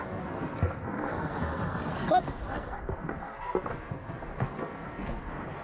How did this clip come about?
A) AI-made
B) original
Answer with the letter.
A